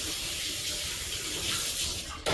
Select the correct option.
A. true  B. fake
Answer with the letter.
B